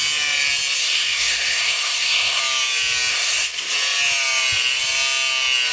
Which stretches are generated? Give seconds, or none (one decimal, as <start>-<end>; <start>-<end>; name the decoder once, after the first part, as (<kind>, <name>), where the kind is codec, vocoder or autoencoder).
0.8-2.4 (codec, SNAC); 3.1-3.7